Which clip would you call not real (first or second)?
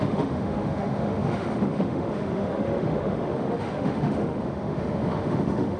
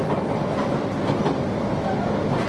first